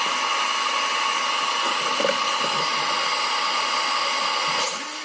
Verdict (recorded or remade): recorded